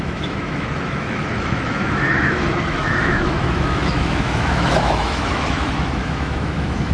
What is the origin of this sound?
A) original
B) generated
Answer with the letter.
B